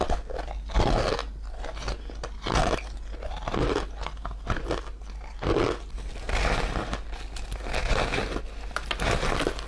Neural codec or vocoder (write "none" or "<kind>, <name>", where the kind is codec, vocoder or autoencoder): none